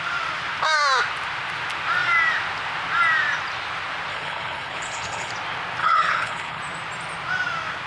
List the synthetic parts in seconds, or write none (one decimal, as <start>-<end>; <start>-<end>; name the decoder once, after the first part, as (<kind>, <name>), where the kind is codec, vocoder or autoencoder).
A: 4.1-5.3 (codec, HILCodec); 5.8-6.6